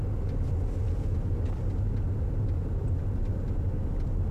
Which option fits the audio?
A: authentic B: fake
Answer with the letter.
A